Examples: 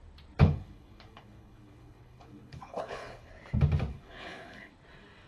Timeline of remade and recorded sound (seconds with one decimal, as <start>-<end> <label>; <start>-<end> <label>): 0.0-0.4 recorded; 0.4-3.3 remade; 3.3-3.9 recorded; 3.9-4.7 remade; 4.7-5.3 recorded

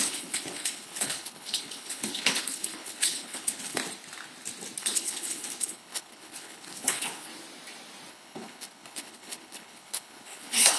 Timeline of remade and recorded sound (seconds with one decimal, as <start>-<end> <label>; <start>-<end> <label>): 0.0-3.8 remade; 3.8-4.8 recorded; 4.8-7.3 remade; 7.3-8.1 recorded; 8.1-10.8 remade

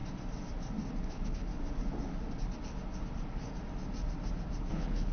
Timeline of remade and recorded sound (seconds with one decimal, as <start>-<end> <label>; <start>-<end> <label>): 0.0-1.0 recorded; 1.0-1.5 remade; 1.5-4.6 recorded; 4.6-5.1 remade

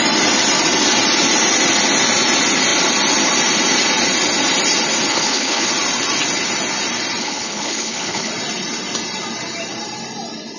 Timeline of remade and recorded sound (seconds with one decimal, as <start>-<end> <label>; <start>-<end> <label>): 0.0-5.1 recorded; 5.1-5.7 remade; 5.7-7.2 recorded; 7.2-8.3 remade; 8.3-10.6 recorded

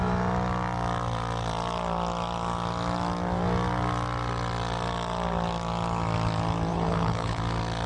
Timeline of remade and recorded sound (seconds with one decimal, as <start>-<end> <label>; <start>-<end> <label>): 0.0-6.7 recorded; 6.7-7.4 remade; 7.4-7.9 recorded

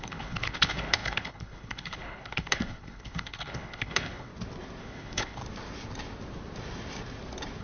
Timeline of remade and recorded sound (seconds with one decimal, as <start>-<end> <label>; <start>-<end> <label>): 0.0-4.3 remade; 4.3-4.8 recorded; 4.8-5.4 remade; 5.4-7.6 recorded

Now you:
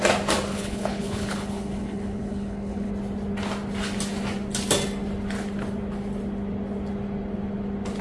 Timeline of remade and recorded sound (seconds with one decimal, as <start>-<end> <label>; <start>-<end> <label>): 0.0-0.5 recorded; 0.5-2.9 remade; 2.9-8.0 recorded